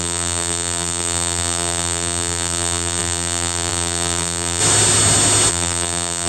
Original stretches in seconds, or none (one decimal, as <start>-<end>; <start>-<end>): 4.6-5.5